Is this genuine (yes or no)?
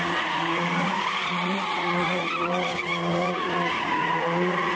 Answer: no